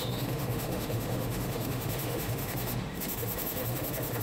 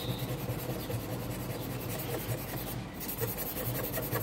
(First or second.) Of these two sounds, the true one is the second